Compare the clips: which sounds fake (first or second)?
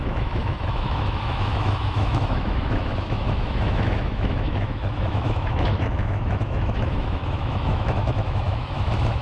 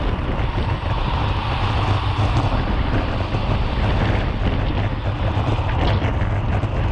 first